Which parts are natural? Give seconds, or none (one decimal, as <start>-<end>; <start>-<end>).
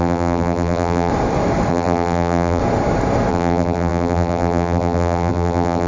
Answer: 1.1-1.7; 2.6-3.3